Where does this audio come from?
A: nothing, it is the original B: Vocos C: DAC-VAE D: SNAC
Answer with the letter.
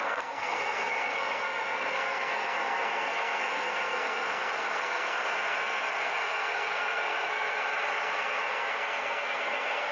D